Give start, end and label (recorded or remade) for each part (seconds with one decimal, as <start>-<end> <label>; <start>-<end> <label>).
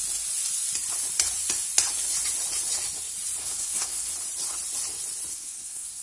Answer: 0.0-3.4 recorded; 3.4-4.1 remade; 4.1-5.3 recorded; 5.3-6.0 remade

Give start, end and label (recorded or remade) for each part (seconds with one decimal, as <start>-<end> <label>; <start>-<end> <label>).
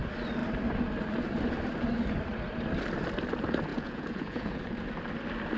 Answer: 0.0-3.7 recorded; 3.7-4.6 remade; 4.6-5.6 recorded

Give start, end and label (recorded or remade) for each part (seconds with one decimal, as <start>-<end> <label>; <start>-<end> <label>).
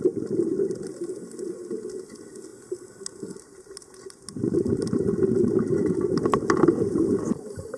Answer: 0.0-7.8 recorded